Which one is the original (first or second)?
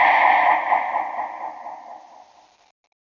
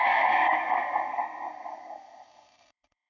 first